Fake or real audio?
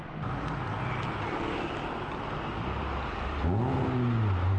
real